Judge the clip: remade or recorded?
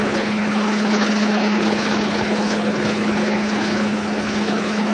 remade